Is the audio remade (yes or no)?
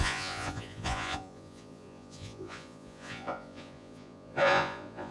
yes